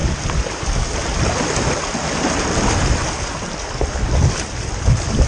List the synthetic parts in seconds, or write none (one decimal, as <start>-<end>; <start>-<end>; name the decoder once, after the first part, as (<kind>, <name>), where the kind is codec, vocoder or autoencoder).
none